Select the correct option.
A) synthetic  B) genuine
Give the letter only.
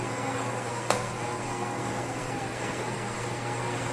A